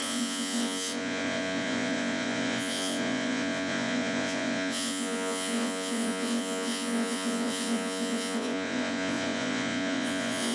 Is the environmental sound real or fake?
fake